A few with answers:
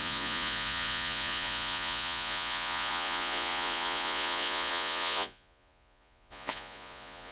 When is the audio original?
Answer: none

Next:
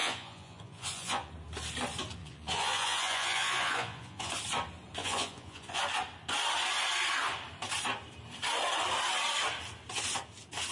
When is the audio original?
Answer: 1.3-2.2; 4.3-5.0; 5.8-10.7

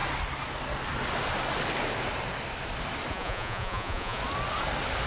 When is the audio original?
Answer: 0.0-3.1; 4.2-5.1

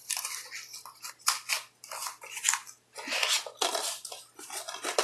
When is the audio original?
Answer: 0.0-5.0

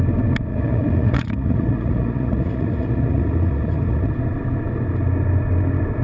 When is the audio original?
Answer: 0.0-0.5; 4.1-6.0

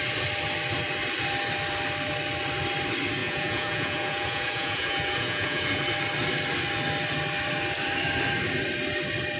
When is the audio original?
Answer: 0.0-3.2; 5.8-9.4

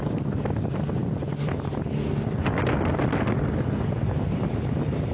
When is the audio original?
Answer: 0.0-5.1

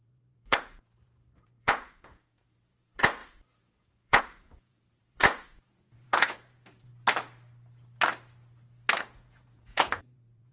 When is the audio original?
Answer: 6.9-9.0